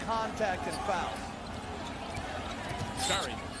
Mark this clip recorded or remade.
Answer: recorded